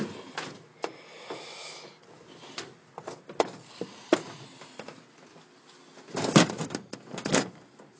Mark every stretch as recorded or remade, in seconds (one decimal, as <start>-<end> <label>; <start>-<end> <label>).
0.0-8.0 recorded